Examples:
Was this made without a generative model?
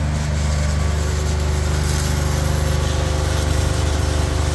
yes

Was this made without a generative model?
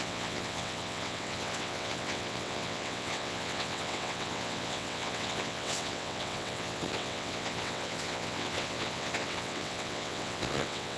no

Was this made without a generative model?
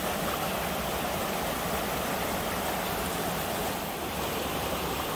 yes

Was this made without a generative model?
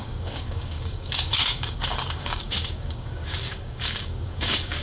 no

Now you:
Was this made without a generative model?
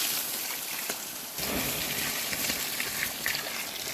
yes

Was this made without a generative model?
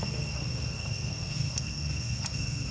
no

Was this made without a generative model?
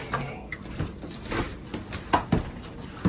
yes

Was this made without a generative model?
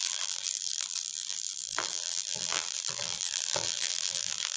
no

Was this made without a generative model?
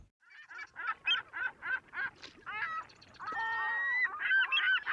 yes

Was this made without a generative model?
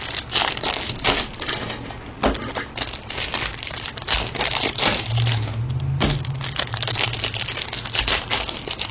yes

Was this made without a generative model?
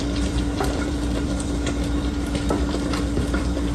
no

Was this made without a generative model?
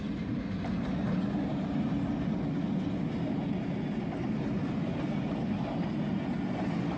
yes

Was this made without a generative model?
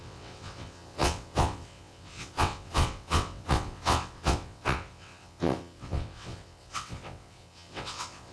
no